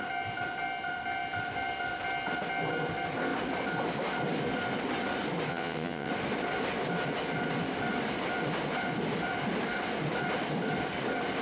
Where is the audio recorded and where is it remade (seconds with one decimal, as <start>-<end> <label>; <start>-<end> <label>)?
0.0-5.5 recorded; 5.5-6.1 remade; 6.1-11.4 recorded